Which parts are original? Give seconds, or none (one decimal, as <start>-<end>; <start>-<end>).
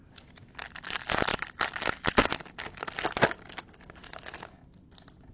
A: 0.0-5.3